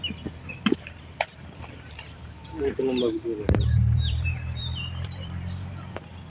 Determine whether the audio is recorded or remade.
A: remade